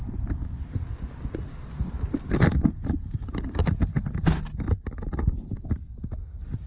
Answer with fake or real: real